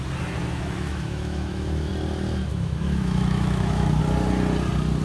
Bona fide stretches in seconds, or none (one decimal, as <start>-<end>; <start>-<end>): 0.0-0.4; 1.9-2.5; 4.0-5.0